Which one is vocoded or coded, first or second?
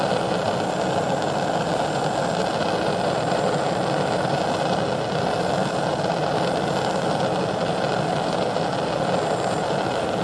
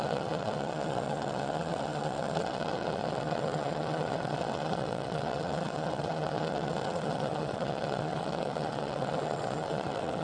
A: second